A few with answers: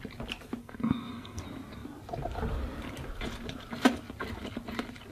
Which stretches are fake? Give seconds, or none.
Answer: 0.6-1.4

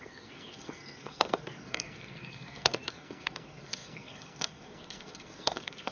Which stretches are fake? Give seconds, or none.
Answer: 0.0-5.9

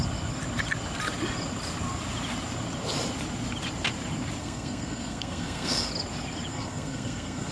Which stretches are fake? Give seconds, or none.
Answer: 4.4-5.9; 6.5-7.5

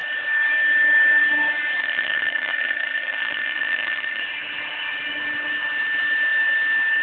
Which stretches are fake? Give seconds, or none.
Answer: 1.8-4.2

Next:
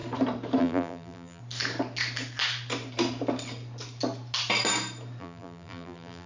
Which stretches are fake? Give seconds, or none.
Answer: 0.6-1.4; 5.2-6.3

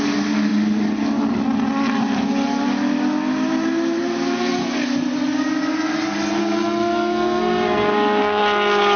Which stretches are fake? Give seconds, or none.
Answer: 6.4-8.4